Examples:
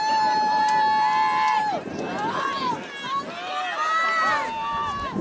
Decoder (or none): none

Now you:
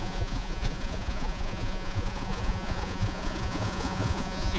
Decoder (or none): vocoder, Vocos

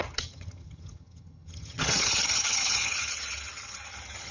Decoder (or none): vocoder, HiFi-GAN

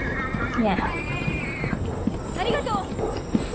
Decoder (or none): none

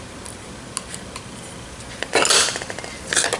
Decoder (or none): none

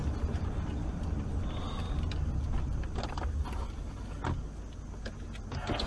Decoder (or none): none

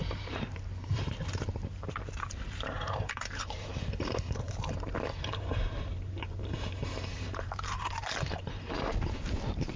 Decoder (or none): vocoder, BigVGAN v2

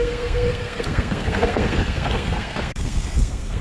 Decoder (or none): codec, SNAC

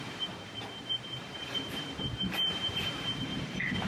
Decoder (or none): vocoder, BigVGAN v2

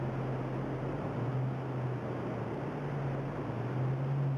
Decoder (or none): none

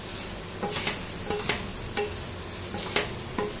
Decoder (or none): none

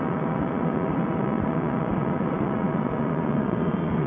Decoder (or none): vocoder, Vocos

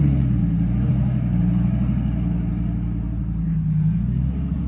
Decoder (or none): none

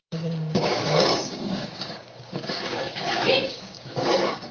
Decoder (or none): codec, DAC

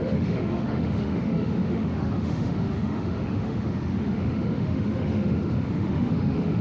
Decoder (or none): autoencoder, DAC-VAE